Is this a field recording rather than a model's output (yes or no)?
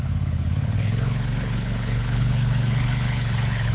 no